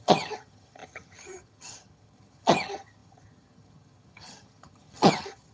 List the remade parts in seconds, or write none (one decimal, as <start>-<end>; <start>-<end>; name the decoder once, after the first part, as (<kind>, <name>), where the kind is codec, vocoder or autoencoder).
0.0-5.5 (vocoder, HiFi-GAN)

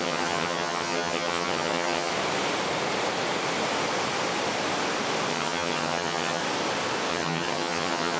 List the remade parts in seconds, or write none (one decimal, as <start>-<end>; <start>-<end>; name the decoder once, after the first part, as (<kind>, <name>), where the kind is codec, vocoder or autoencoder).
0.0-2.1 (vocoder, HiFi-GAN); 5.3-6.4; 7.1-8.2

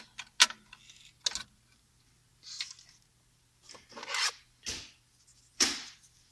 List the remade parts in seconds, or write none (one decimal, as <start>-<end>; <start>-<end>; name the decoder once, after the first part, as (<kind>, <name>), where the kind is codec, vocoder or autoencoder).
none

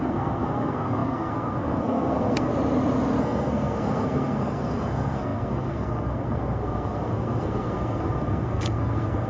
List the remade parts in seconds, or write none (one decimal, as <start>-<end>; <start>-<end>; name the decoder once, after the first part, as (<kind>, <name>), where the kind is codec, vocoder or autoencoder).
0.0-2.5 (codec, SNAC); 3.2-9.3

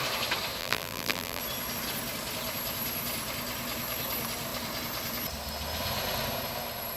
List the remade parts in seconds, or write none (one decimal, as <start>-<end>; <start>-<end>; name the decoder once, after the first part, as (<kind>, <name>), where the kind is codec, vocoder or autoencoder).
0.6-1.4 (vocoder, BigVGAN v2)

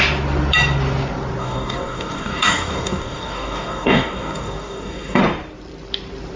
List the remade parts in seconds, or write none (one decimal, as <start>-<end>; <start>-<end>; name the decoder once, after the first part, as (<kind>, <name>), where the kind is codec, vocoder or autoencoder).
1.4-5.2 (codec, DAC)

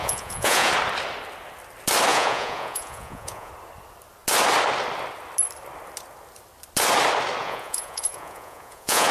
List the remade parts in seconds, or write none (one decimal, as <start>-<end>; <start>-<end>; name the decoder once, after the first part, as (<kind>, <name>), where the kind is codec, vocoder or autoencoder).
0.0-0.7 (vocoder, Vocos); 2.1-3.5; 7.4-9.1

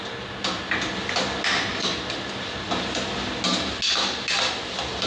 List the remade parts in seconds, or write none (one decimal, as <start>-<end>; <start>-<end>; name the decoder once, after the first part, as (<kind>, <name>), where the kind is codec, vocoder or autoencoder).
1.7-3.1 (vocoder, BigVGAN v2)